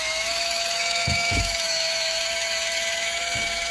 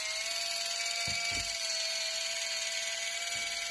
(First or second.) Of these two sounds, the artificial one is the first